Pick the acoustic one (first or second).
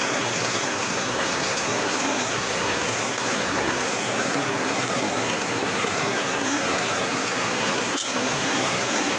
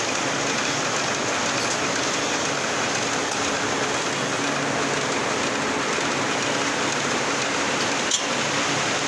second